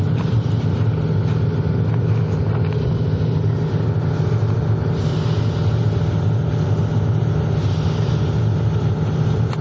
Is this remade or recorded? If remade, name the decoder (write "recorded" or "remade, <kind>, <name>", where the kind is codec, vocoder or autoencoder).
recorded